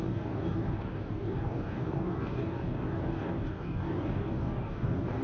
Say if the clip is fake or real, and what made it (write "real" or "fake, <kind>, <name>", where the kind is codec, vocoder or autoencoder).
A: fake, codec, DAC